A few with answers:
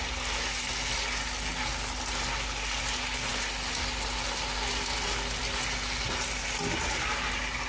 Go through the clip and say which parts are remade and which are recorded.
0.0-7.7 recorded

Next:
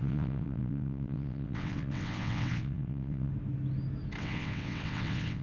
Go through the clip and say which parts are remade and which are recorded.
0.0-3.3 remade; 3.3-4.2 recorded; 4.2-5.4 remade

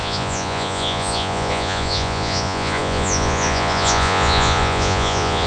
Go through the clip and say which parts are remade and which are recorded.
0.0-5.5 remade

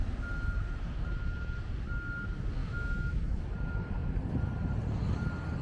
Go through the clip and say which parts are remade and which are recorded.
0.0-2.6 recorded; 2.6-3.4 remade; 3.4-5.6 recorded

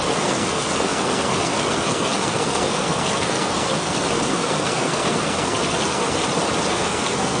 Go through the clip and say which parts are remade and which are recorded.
0.0-6.2 remade; 6.2-6.7 recorded; 6.7-7.4 remade

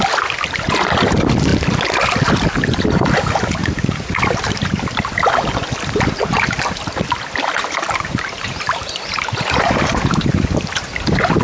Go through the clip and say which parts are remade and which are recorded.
0.0-3.6 recorded; 3.6-4.2 remade; 4.2-11.4 recorded

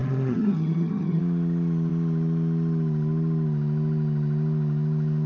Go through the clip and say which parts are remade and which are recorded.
0.0-1.2 remade; 1.2-5.3 recorded

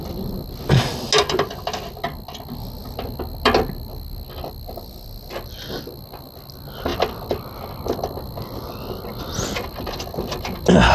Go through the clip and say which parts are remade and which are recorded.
0.0-10.9 recorded